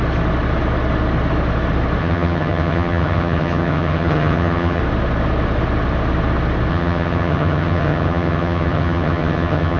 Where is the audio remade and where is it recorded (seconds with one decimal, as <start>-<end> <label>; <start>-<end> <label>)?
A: 0.0-2.0 recorded; 2.0-4.8 remade; 4.8-6.7 recorded; 6.7-9.8 remade